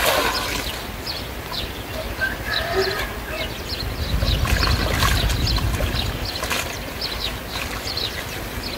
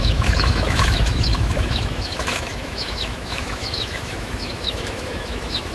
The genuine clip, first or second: first